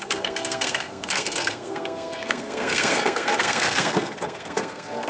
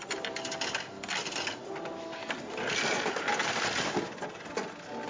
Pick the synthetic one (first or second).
first